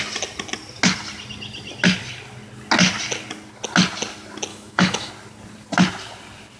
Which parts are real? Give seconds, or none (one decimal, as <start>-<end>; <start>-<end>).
0.0-4.5; 5.1-6.6